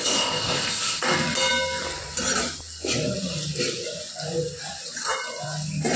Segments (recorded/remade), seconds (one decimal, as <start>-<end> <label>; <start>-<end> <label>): 0.0-1.0 remade; 1.0-6.0 recorded